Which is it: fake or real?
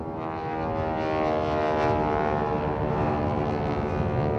real